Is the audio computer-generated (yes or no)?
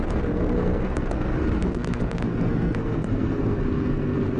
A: yes